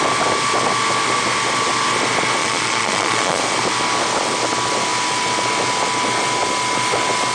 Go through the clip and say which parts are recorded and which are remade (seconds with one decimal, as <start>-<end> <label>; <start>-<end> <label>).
0.0-2.4 recorded; 2.4-3.4 remade; 3.4-7.3 recorded